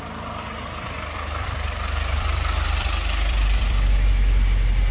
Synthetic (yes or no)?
yes